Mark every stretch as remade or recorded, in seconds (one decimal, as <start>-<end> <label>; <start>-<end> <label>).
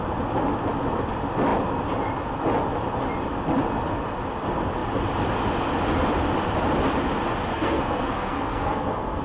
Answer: 0.0-7.5 recorded; 7.5-9.2 remade